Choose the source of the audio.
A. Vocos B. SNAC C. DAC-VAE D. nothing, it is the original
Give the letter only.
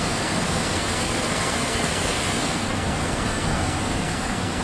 B